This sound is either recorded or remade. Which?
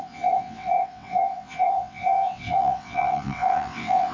remade